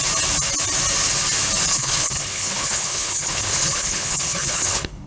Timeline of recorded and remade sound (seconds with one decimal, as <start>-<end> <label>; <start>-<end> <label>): 0.0-1.7 recorded; 1.7-5.1 remade